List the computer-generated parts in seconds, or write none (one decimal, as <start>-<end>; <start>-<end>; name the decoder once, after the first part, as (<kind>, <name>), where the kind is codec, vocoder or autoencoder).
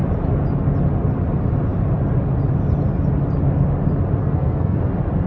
4.2-4.8 (codec, SNAC)